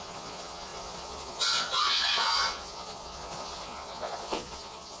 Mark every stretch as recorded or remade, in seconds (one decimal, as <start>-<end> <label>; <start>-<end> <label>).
0.0-5.0 remade